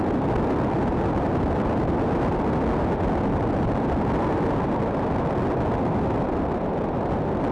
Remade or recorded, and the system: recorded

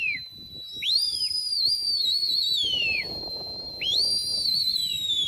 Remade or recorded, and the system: remade, vocoder, BigVGAN v2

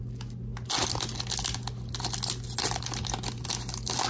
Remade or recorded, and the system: recorded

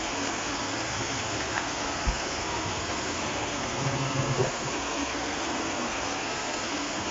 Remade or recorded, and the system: remade, codec, SNAC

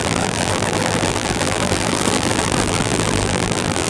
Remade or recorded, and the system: remade, vocoder, BigVGAN v2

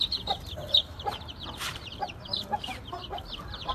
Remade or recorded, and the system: remade, vocoder, BigVGAN v2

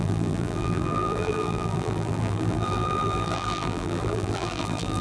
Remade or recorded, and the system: remade, vocoder, BigVGAN v2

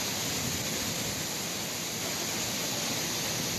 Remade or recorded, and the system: recorded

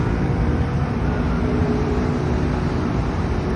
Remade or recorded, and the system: remade, vocoder, BigVGAN v2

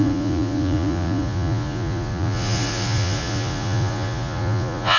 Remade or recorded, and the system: remade, vocoder, Vocos